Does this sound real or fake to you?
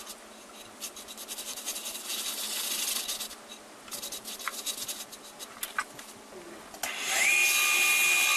real